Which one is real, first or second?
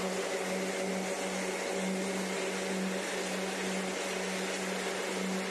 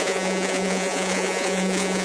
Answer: first